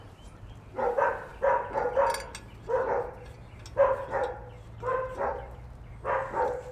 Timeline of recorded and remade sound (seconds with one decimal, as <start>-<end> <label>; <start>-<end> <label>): 0.0-6.7 recorded